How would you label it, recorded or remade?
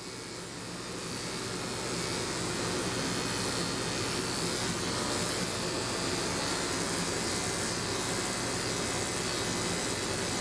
recorded